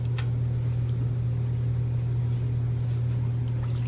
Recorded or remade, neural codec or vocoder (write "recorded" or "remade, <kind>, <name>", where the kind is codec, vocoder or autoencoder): recorded